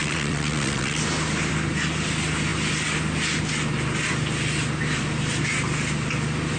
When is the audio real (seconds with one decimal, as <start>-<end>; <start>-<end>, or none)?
1.0-6.6